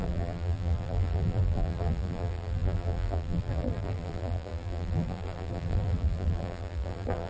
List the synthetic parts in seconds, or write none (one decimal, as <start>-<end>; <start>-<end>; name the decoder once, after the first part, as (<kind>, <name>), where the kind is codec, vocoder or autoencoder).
0.0-7.3 (vocoder, BigVGAN v2)